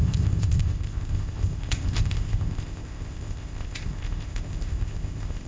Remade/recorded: remade